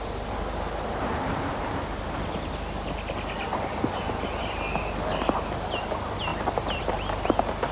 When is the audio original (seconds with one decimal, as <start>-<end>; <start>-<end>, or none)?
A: 0.0-7.7